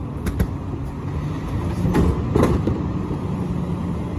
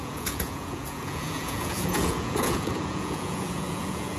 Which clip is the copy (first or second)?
second